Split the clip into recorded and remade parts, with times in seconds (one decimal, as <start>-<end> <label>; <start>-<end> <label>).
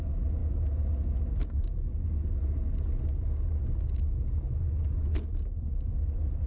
0.0-6.5 recorded